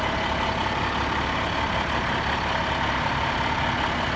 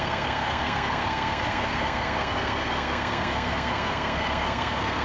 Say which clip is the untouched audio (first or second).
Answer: first